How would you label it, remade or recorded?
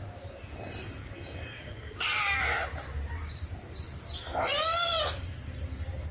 recorded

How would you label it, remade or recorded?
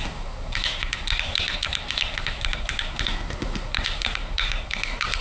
remade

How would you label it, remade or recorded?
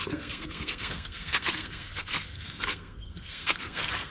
remade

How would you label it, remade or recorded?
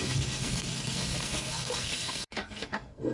remade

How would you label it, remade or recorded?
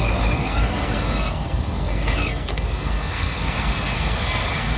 remade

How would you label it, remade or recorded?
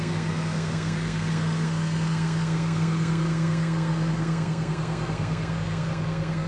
remade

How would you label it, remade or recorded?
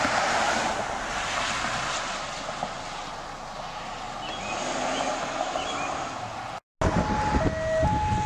recorded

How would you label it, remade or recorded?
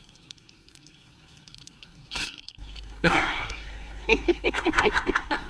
remade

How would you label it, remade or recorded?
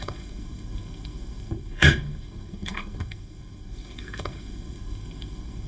remade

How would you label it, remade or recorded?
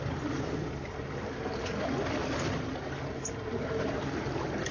recorded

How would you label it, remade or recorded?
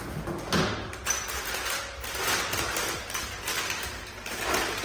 recorded